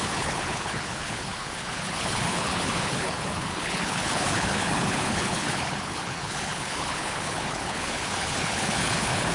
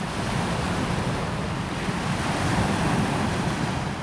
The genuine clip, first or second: second